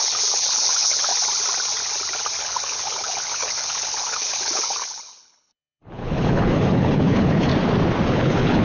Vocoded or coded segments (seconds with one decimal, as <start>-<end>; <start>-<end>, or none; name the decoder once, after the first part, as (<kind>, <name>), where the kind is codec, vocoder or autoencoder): 0.0-1.1 (codec, HILCodec); 2.4-7.5; 8.1-8.6